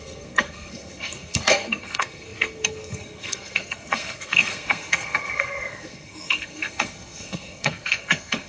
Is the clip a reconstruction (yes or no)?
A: yes